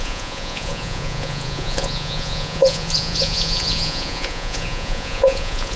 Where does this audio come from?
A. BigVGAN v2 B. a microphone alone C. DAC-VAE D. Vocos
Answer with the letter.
D